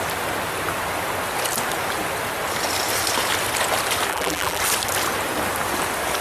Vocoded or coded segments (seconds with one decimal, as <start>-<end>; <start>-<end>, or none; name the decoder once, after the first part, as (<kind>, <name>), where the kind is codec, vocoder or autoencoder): 4.1-4.6 (vocoder, BigVGAN v2)